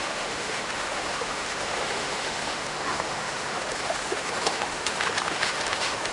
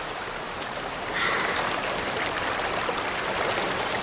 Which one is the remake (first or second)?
first